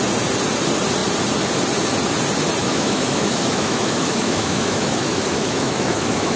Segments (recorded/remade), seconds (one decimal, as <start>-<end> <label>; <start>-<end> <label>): 0.0-2.6 recorded; 2.6-6.4 remade